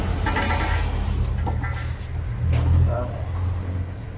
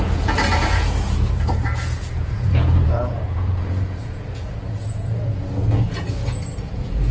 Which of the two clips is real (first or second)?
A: first